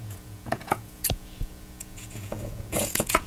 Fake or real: fake